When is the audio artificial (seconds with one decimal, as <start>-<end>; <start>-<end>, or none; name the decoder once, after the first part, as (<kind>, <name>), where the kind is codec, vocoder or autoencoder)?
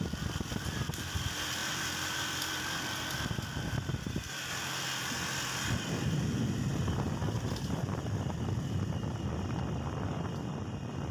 none